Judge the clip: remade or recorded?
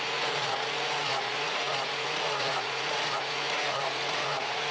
remade